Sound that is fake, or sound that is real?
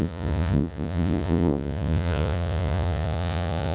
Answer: fake